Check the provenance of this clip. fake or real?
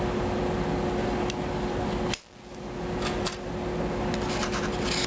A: real